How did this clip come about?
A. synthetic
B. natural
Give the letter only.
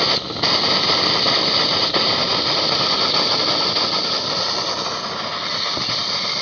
B